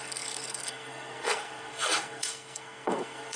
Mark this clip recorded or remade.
remade